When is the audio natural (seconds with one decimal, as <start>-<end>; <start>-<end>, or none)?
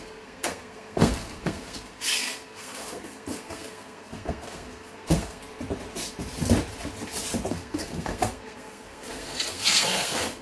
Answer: 5.4-7.5